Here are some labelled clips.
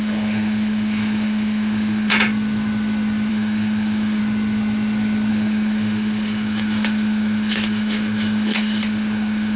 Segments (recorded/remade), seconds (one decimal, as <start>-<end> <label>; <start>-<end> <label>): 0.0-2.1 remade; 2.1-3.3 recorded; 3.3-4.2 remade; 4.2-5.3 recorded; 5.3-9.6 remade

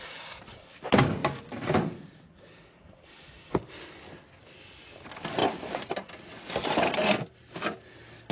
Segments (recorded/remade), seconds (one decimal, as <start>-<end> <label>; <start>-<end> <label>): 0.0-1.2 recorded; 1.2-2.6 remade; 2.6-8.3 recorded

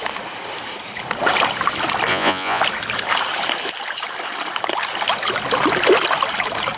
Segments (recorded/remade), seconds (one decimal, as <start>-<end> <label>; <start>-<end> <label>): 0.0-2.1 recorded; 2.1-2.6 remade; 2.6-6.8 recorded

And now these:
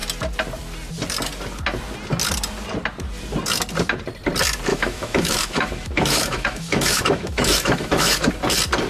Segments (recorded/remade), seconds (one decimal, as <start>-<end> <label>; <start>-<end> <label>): 0.0-4.7 recorded; 4.7-8.3 remade; 8.3-8.9 recorded